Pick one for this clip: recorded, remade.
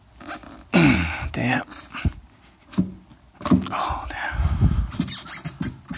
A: recorded